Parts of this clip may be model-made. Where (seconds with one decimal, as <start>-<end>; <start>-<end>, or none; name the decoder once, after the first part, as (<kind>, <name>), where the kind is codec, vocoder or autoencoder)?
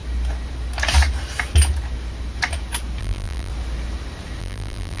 3.0-3.5 (vocoder, BigVGAN v2); 4.4-5.0